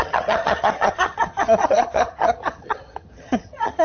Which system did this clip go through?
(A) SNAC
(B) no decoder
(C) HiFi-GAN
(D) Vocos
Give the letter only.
C